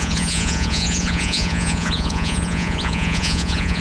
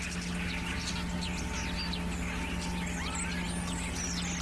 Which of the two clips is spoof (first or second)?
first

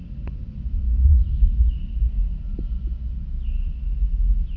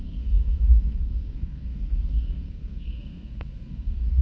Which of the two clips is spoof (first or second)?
second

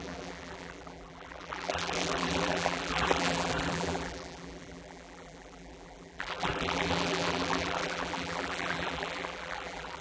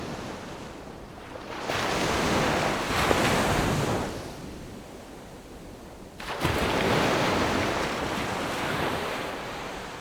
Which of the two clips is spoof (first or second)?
first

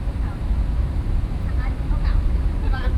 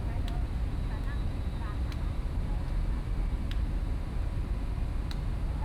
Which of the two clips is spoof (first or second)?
first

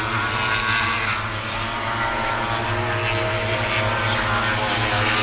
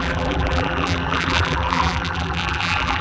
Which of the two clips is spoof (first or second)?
second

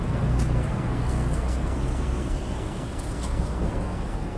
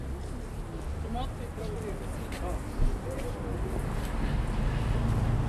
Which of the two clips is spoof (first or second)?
first